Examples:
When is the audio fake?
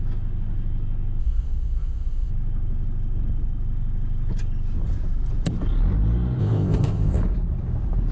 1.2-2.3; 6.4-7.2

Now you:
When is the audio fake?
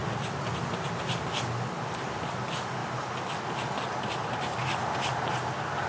none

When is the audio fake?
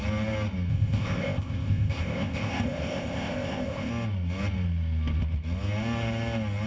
0.7-3.9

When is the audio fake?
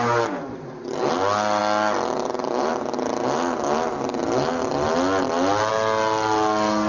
none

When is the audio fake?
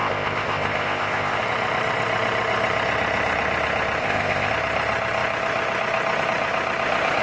0.0-1.4; 4.0-4.5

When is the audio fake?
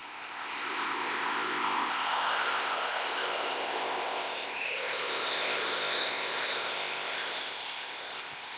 0.0-8.6